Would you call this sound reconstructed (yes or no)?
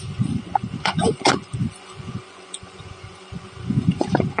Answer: yes